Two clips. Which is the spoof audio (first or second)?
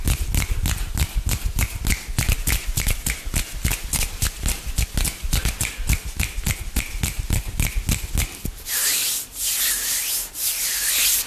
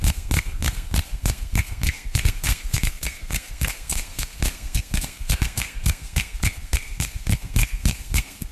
second